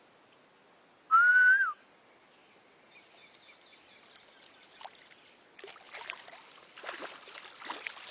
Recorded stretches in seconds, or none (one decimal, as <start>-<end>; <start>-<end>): 0.0-8.1